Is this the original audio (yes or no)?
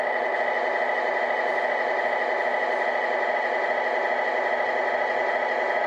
yes